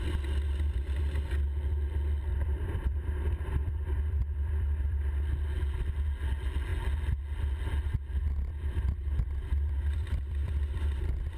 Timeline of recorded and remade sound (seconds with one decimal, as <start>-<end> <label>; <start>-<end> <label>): 0.0-2.3 recorded; 2.3-5.0 remade; 5.0-8.5 recorded; 8.5-11.0 remade; 11.0-11.4 recorded